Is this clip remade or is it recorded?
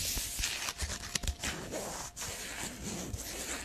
recorded